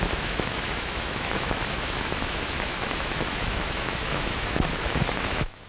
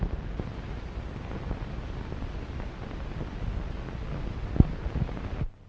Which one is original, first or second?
second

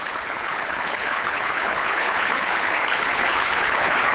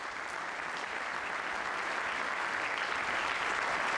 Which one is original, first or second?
second